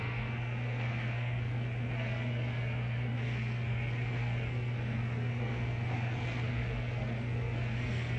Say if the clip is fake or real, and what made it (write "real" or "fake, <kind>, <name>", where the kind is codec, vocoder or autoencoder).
fake, codec, SNAC